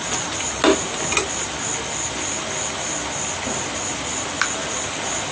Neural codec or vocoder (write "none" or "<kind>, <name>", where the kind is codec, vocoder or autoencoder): none